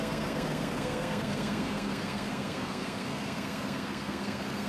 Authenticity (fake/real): fake